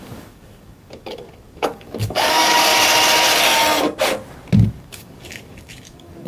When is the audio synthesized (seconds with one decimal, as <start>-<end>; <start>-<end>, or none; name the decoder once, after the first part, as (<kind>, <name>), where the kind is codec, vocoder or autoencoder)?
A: 0.0-2.7 (codec, DAC); 4.7-6.3